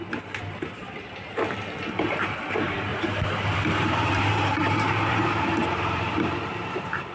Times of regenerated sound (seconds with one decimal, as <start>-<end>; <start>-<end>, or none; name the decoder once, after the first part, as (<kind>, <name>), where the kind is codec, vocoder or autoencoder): 0.8-1.4 (vocoder, BigVGAN v2); 2.9-7.1